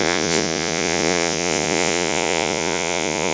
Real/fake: fake